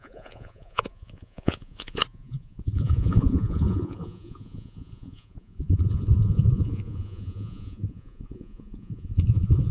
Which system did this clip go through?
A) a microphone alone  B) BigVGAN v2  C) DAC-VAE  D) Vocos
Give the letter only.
D